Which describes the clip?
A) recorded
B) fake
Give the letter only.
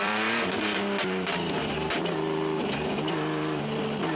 B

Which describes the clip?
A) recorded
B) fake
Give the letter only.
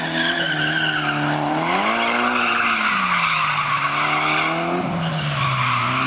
A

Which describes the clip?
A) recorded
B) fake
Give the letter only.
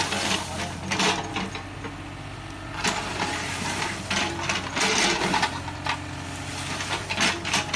A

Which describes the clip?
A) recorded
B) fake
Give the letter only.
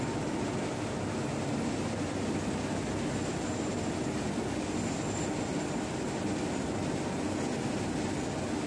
A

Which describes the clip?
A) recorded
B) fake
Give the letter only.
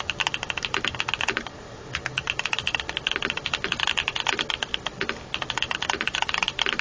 A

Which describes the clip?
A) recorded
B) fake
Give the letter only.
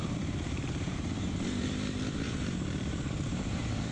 B